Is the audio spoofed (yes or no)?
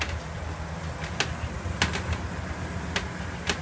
no